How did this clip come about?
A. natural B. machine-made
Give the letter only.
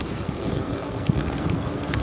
B